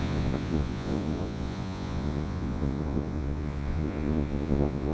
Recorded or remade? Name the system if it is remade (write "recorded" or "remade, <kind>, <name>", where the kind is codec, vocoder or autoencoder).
remade, vocoder, Vocos